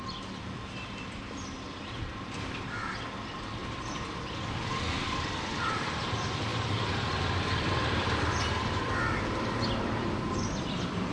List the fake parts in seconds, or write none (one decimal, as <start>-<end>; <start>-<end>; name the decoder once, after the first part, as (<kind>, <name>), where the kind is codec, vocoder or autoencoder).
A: 0.0-3.6 (vocoder, BigVGAN v2); 4.9-11.1